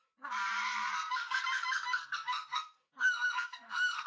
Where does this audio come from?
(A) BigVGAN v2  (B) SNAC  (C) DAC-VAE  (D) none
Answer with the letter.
B